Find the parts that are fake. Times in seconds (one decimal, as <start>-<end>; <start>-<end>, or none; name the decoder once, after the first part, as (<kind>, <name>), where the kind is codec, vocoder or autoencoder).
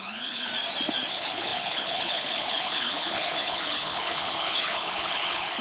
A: 0.0-0.5 (codec, HILCodec); 1.1-5.6